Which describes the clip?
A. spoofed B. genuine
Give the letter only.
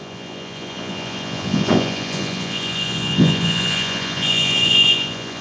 A